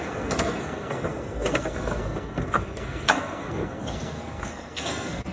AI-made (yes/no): yes